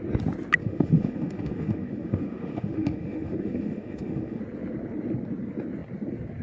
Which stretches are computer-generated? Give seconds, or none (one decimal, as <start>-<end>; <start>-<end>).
0.6-4.4